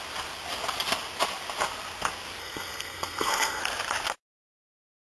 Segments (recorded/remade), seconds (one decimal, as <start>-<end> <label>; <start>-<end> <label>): 0.0-2.4 recorded; 2.4-3.6 remade; 3.6-5.1 recorded